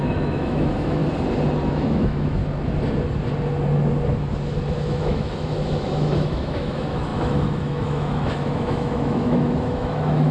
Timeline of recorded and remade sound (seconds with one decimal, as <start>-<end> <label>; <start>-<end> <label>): 0.0-1.0 remade; 1.0-1.7 recorded; 1.7-2.4 remade; 2.4-4.7 recorded; 4.7-10.3 remade